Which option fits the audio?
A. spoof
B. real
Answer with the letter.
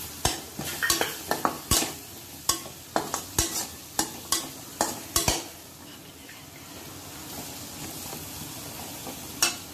B